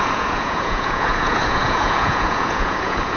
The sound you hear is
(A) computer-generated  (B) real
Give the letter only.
A